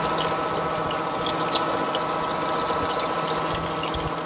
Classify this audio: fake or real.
real